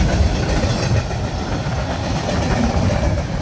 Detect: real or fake real